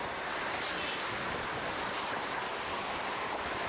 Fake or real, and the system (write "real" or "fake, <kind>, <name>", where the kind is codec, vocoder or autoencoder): real